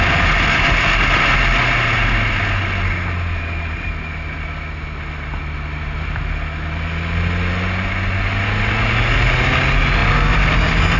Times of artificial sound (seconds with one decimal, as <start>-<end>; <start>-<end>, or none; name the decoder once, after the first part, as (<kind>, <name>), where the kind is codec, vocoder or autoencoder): none